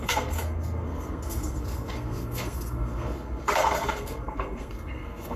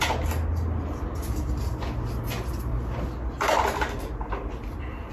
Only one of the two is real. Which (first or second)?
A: second